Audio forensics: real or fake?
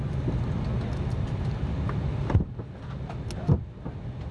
real